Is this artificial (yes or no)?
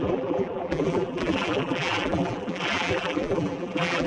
yes